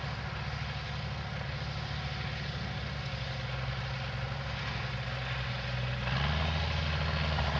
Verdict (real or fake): real